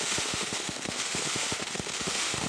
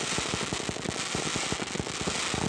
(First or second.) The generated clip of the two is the first